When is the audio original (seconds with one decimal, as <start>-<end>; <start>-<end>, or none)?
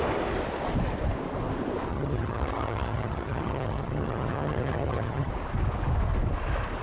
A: 0.0-1.9; 5.3-6.8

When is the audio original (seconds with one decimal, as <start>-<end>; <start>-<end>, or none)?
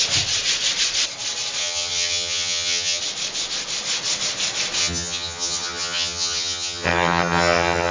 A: 0.0-1.6; 3.0-4.8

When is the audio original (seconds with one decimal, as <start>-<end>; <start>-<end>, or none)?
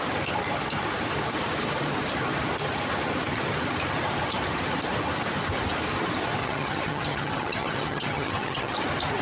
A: 0.0-6.4; 8.7-9.2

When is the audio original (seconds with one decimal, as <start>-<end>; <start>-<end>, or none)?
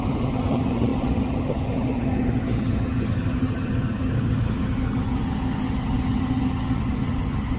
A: none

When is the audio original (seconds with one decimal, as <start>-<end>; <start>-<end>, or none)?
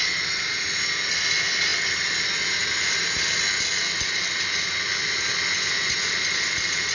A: 0.0-6.9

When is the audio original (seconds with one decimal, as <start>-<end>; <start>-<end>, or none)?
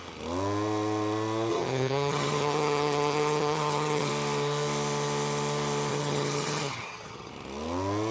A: 0.0-1.5; 4.1-5.9; 7.3-8.1